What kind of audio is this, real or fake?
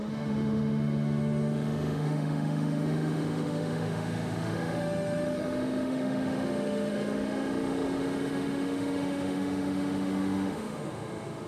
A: fake